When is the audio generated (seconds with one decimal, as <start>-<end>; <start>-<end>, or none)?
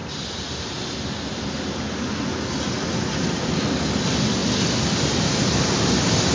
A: none